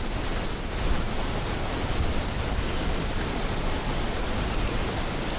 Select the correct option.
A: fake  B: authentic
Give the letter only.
B